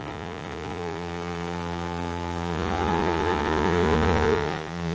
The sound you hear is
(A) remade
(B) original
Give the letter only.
A